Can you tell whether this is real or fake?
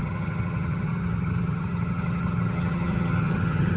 fake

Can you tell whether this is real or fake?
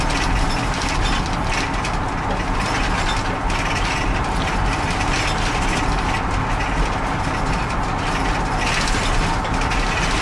real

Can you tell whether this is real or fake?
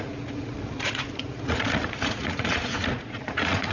fake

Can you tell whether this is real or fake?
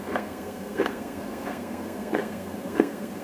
fake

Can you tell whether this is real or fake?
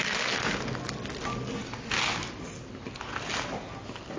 real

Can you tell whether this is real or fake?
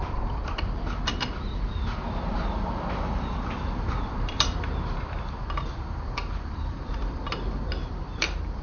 fake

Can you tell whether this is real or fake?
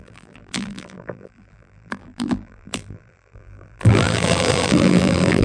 fake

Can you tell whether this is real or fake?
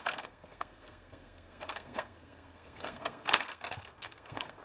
fake